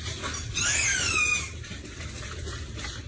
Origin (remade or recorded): recorded